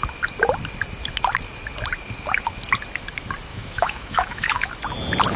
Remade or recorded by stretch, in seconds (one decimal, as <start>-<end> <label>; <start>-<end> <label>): 0.0-3.5 recorded; 3.5-4.7 remade; 4.7-5.4 recorded

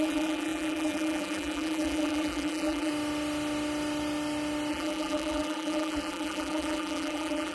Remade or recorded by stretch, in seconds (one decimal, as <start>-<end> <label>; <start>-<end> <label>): 0.0-2.9 remade; 2.9-4.7 recorded; 4.7-7.5 remade

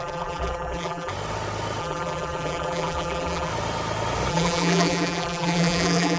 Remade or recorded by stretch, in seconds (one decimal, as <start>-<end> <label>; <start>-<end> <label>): 0.0-1.1 remade; 1.1-1.8 recorded; 1.8-3.5 remade; 3.5-4.3 recorded; 4.3-6.2 remade

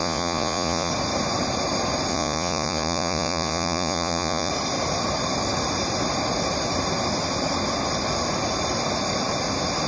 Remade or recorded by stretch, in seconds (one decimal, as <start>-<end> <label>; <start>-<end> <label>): 0.0-0.9 remade; 0.9-2.1 recorded; 2.1-4.5 remade; 4.5-9.9 recorded

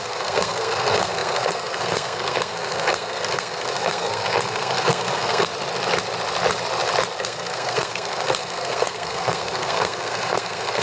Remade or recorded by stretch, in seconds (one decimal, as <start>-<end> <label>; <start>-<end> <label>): 0.0-5.5 remade; 5.5-7.2 recorded; 7.2-10.8 remade

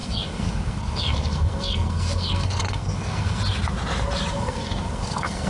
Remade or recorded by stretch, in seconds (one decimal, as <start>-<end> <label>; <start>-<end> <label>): 0.0-3.4 remade; 3.4-4.3 recorded; 4.3-5.5 remade

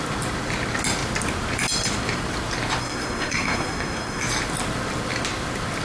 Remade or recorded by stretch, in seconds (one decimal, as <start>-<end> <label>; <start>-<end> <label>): 0.0-2.8 recorded; 2.8-4.2 remade; 4.2-5.8 recorded